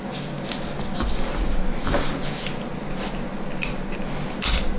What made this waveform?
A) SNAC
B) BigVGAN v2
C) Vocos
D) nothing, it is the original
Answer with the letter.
D